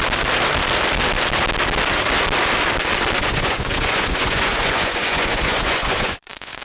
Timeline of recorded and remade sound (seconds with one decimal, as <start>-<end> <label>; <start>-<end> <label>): 0.0-3.2 recorded; 3.2-6.6 remade